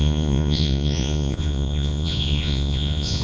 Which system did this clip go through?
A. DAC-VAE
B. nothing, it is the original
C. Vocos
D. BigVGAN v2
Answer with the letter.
C